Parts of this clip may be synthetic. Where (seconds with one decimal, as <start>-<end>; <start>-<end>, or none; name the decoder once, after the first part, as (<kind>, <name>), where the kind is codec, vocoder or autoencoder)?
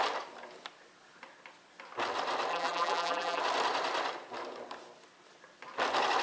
2.5-3.4 (vocoder, BigVGAN v2)